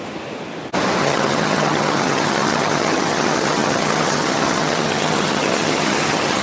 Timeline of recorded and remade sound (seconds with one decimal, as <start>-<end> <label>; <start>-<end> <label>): 0.0-1.0 recorded; 1.0-6.4 remade